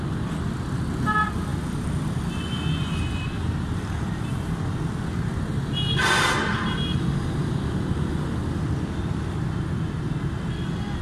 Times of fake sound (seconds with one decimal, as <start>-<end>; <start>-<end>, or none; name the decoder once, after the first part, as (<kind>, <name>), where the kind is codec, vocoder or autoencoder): 1.5-4.1 (vocoder, BigVGAN v2)